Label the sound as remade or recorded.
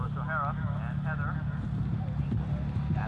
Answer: recorded